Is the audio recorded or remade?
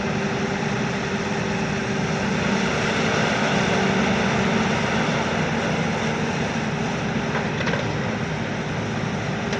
recorded